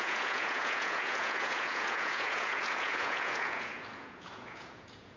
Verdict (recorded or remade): remade